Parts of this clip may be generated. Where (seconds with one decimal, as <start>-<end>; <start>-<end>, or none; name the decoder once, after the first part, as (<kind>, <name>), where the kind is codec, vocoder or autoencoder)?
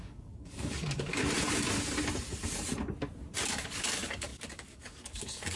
0.0-1.2 (codec, DAC); 3.5-5.6